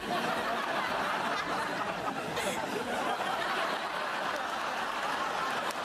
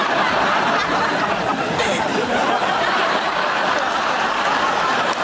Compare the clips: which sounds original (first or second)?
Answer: first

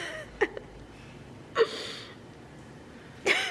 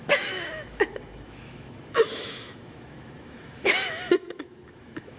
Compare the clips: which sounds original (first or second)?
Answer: first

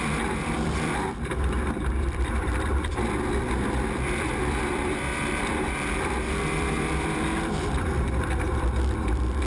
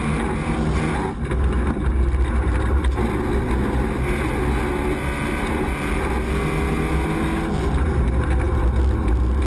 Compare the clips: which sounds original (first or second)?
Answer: second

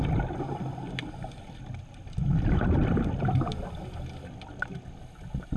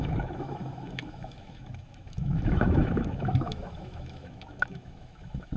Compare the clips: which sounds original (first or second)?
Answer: first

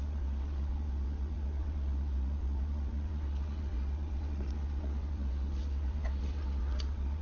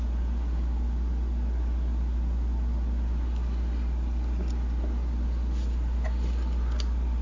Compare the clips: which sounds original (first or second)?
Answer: second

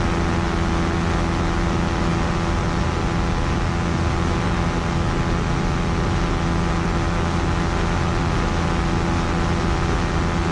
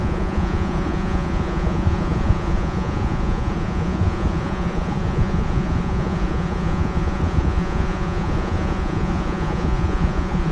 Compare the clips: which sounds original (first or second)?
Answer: first